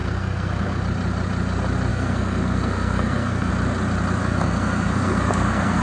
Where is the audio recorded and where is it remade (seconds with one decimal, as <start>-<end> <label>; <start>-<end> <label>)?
0.0-0.8 remade; 0.8-1.9 recorded; 1.9-3.5 remade; 3.5-4.2 recorded; 4.2-5.8 remade